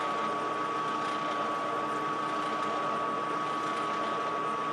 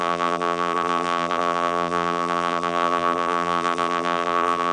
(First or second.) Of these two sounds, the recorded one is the first